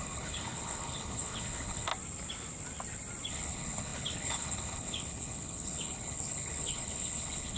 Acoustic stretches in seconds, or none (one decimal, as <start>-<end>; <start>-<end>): 1.9-3.3